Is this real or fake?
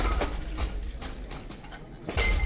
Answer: real